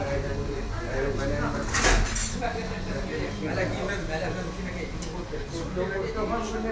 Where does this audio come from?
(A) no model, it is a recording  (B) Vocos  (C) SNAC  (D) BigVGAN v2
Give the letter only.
A